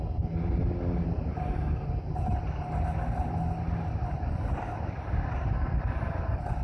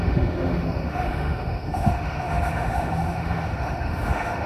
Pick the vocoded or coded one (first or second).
second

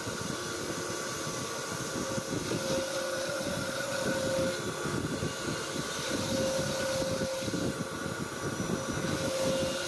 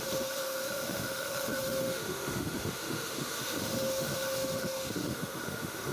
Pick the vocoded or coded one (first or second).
second